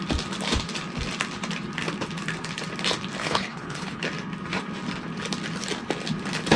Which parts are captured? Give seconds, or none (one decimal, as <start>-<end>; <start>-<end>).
0.0-3.2; 4.0-6.6

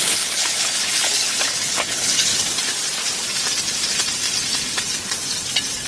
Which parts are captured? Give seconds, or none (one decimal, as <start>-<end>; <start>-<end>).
2.3-5.9

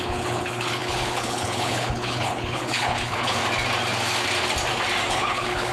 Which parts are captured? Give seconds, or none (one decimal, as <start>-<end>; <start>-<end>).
3.4-5.1

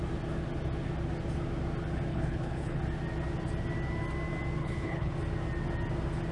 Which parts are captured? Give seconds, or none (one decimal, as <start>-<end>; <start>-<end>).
0.0-2.1; 2.8-4.6; 5.1-6.3

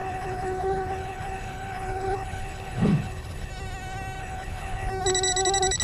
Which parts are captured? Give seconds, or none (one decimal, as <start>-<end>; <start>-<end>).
3.5-4.2; 4.9-5.8

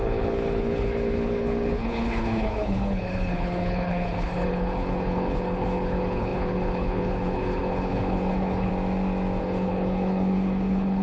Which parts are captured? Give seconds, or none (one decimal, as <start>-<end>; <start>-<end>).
8.7-9.4

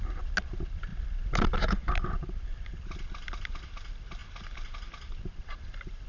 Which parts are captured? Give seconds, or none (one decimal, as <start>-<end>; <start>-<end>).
0.0-6.1

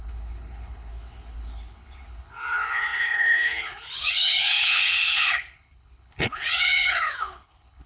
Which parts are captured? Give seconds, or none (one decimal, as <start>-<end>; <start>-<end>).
none